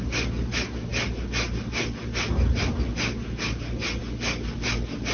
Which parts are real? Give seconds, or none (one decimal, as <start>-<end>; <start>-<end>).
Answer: 0.0-5.1